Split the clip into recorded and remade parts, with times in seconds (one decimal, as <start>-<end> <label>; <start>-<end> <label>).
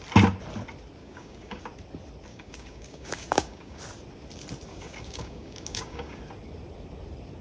0.0-1.0 recorded; 1.0-1.6 remade; 1.6-2.3 recorded; 2.3-3.8 remade; 3.8-4.7 recorded; 4.7-6.2 remade; 6.2-7.4 recorded